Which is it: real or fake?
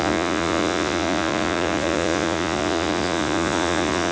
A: fake